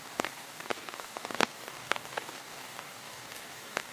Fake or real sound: fake